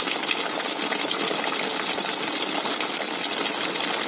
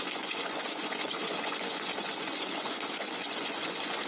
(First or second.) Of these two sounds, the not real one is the second